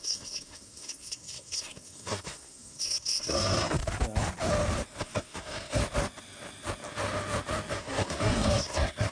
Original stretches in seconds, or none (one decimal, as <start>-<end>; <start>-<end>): 3.8-5.0; 5.8-7.7